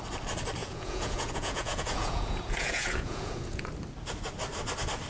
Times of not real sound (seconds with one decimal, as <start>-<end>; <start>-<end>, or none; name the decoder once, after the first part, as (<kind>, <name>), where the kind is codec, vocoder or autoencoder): 0.6-3.7 (vocoder, Vocos)